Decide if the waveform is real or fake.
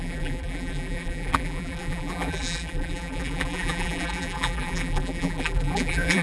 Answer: fake